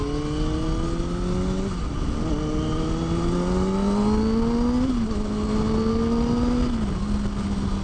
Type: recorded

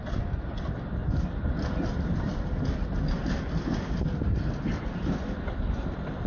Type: recorded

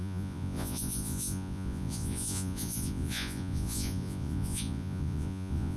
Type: remade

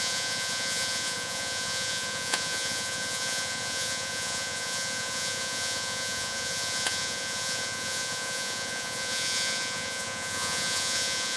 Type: remade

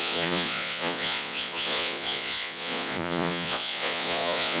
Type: remade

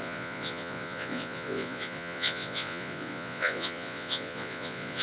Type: remade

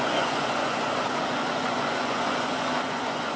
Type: remade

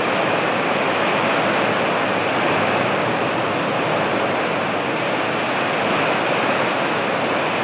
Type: recorded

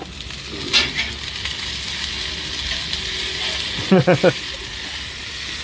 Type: recorded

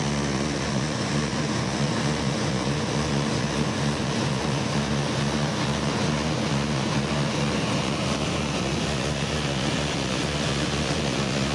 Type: remade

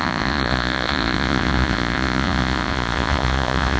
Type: remade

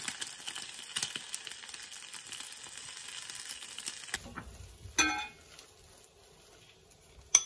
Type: recorded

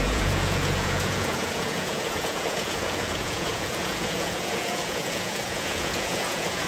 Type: remade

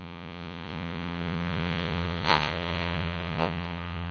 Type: remade